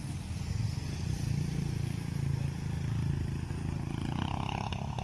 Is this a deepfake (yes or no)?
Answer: no